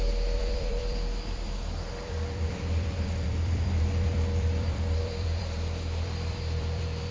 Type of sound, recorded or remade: remade